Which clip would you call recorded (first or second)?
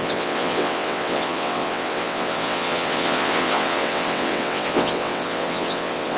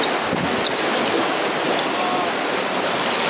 second